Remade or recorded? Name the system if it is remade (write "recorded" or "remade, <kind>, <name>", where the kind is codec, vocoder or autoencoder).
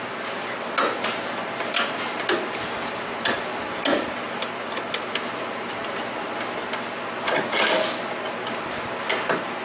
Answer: recorded